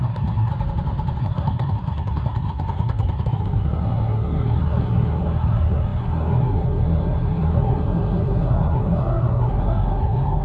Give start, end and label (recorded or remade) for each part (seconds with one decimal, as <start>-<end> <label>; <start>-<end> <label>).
0.0-0.5 remade; 0.5-1.2 recorded; 1.2-10.4 remade